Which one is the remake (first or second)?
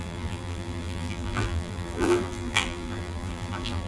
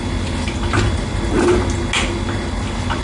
first